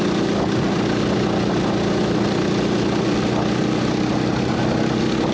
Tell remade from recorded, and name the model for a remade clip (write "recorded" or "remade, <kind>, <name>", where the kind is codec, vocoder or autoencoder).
recorded